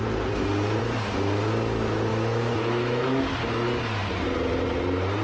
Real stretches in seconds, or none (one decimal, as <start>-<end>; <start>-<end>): 0.0-2.1; 3.2-5.2